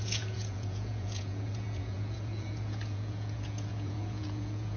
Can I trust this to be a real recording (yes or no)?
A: no